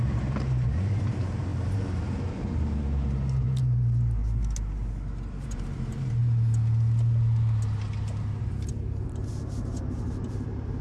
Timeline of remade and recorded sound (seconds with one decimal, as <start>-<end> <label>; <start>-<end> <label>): 0.0-4.2 remade; 4.2-5.3 recorded; 5.3-6.2 remade; 6.2-8.4 recorded; 8.4-10.8 remade